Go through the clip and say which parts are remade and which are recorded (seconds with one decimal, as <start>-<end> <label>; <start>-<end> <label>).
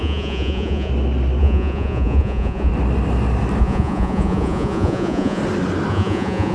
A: 0.0-0.9 remade; 0.9-1.4 recorded; 1.4-2.7 remade; 2.7-3.6 recorded; 3.6-5.4 remade; 5.4-5.9 recorded; 5.9-6.5 remade